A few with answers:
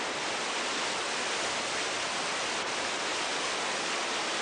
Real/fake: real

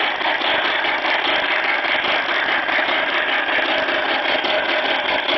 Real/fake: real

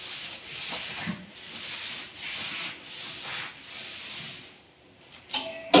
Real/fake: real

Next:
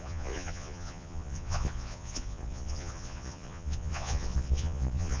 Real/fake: fake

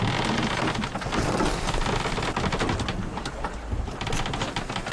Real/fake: real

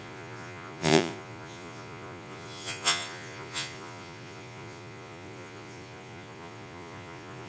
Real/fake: fake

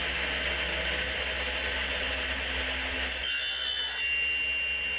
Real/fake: real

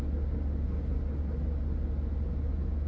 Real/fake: real